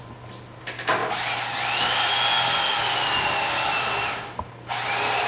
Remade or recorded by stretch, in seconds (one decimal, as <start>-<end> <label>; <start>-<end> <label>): 0.0-5.3 recorded